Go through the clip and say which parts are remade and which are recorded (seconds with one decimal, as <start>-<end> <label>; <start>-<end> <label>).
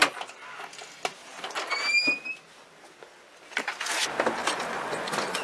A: 0.0-4.4 recorded; 4.4-5.4 remade